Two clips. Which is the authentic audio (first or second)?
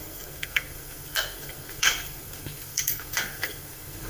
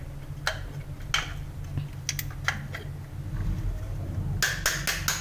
second